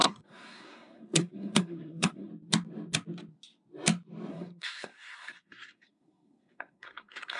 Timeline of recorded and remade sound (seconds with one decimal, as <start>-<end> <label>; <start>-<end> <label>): 0.0-2.3 remade; 2.3-4.3 recorded; 4.3-7.4 remade

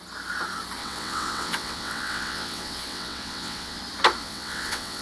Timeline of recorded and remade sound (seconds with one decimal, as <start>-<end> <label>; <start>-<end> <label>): 0.0-0.8 recorded; 0.8-3.8 remade; 3.8-4.2 recorded; 4.2-5.0 remade

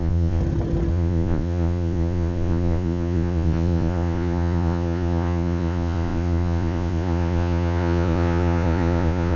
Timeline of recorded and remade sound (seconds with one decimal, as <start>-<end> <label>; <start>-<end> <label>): 0.0-0.4 remade; 0.4-0.9 recorded; 0.9-9.4 remade

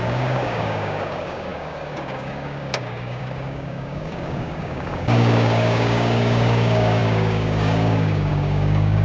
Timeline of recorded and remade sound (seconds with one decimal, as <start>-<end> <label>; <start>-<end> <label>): 0.0-9.0 remade

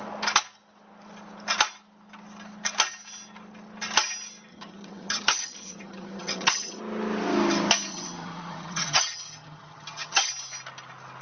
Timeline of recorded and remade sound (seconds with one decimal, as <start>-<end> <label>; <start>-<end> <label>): 0.0-4.5 recorded; 4.5-6.8 remade; 6.8-7.9 recorded; 7.9-10.3 remade; 10.3-11.2 recorded

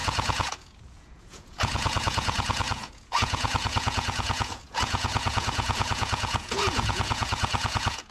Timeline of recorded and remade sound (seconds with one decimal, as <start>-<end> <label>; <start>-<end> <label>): 0.0-8.1 remade